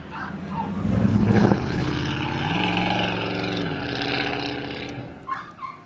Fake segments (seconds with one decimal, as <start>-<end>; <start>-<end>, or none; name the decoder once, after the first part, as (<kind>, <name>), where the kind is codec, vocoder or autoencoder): 1.1-1.9 (codec, HILCodec)